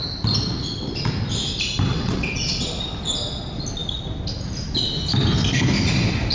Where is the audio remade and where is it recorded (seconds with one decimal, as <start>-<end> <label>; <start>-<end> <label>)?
0.0-1.9 recorded; 1.9-2.7 remade; 2.7-6.3 recorded